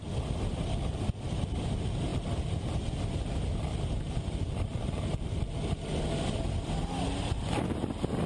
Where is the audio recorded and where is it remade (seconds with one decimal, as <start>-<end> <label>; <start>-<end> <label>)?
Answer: 0.0-8.3 recorded